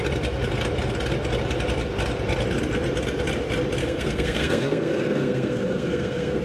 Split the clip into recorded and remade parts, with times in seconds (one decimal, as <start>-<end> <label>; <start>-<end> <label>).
0.0-3.8 recorded; 3.8-6.4 remade